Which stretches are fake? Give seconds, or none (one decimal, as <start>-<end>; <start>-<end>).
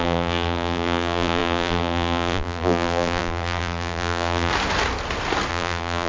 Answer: 0.0-4.5; 5.5-6.1